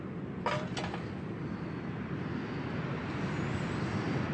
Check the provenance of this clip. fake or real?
real